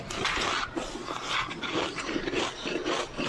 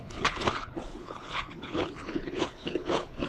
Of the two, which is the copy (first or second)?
second